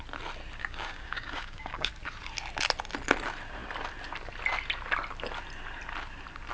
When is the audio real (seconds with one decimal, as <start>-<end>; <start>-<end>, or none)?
0.0-0.6; 1.9-6.5

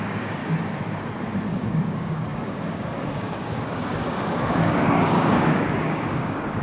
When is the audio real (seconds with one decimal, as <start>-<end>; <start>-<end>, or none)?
0.4-1.5